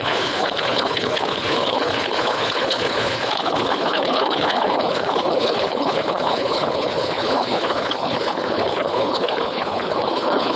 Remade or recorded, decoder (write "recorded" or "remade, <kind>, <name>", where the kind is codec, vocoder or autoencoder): remade, codec, HILCodec